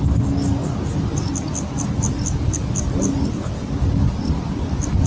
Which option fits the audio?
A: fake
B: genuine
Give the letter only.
B